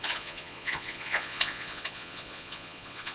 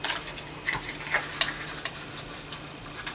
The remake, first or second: first